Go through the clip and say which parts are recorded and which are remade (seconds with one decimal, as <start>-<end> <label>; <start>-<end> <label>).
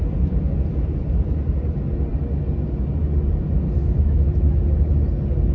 0.0-3.8 recorded; 3.8-4.6 remade; 4.6-5.5 recorded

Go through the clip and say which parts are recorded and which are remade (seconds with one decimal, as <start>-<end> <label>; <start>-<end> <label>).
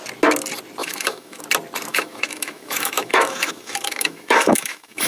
0.0-0.8 recorded; 0.8-1.4 remade; 1.4-1.9 recorded; 1.9-5.1 remade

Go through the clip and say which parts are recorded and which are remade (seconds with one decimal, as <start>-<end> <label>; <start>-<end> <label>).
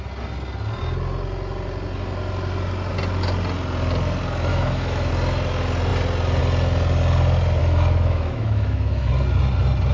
0.0-4.5 recorded; 4.5-5.1 remade; 5.1-7.6 recorded; 7.6-9.1 remade; 9.1-9.9 recorded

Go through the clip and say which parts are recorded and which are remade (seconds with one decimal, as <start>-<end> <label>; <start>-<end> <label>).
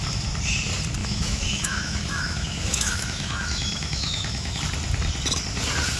0.0-1.0 recorded; 1.0-4.6 remade; 4.6-6.0 recorded